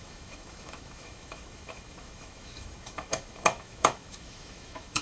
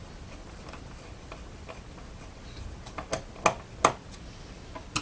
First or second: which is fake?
first